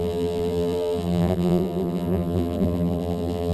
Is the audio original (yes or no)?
no